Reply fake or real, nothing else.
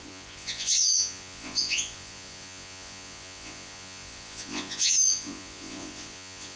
fake